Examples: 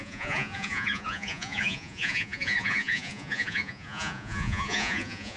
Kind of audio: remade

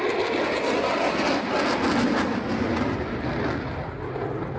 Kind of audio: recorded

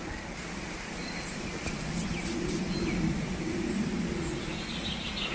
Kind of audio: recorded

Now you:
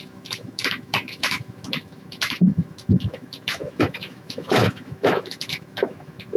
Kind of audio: remade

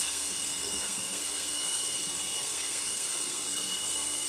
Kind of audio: remade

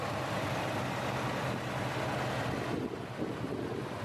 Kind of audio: recorded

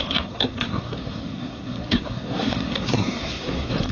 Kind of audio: remade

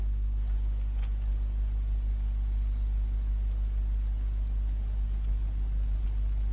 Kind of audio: recorded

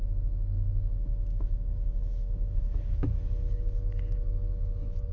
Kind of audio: remade